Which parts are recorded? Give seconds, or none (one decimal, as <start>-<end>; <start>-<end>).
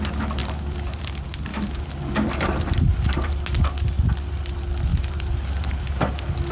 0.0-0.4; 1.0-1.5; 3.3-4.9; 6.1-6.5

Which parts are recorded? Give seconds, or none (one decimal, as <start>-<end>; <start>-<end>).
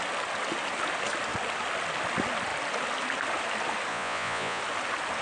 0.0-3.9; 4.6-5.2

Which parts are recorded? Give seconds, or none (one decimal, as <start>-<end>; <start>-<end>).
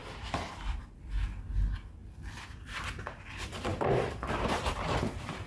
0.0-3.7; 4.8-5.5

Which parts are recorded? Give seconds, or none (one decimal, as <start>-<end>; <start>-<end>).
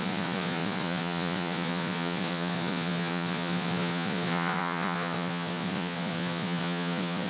none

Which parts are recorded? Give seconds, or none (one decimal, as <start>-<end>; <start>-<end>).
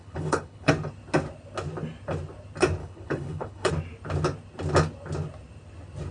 0.7-2.8; 3.7-6.1